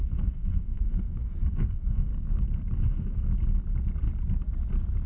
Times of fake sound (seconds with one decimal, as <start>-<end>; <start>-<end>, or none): 0.0-2.1; 2.8-3.3